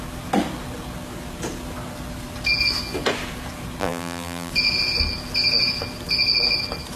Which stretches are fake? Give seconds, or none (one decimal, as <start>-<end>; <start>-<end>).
3.8-4.5